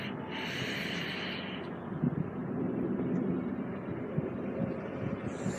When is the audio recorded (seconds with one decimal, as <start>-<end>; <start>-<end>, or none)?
2.4-5.6